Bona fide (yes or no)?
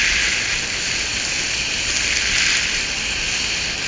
yes